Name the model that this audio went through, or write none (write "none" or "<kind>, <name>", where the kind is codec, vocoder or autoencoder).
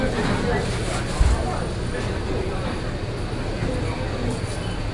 none